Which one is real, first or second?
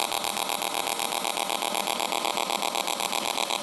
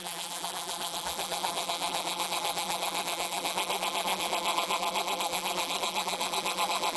first